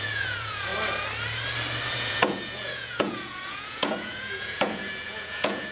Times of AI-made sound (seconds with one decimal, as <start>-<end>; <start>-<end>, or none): 0.0-0.7; 2.0-5.7